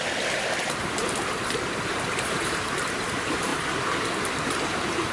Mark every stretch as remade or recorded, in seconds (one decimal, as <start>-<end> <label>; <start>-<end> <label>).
0.0-1.9 recorded; 1.9-5.1 remade

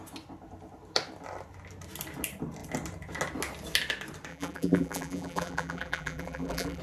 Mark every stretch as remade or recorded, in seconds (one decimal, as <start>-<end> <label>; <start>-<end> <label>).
0.0-4.3 recorded; 4.3-6.8 remade

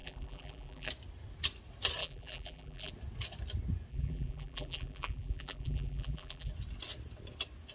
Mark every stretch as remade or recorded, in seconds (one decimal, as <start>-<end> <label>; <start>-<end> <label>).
0.0-0.9 remade; 0.9-2.0 recorded; 2.0-2.9 remade; 2.9-3.9 recorded; 3.9-6.5 remade; 6.5-7.7 recorded

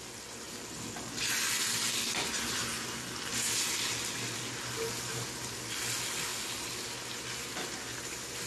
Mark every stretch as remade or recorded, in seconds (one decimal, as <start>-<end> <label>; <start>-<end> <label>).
0.0-8.5 recorded

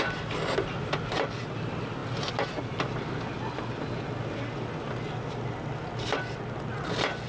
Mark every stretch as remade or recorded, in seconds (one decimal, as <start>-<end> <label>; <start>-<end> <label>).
0.0-7.3 recorded

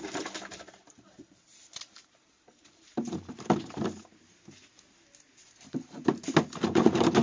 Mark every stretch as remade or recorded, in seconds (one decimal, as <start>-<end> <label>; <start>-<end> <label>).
0.0-4.0 remade; 4.0-7.2 recorded

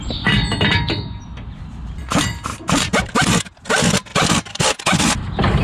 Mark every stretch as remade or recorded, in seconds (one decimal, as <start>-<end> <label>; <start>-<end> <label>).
0.0-2.5 recorded; 2.5-3.1 remade; 3.1-4.1 recorded; 4.1-4.7 remade; 4.7-5.6 recorded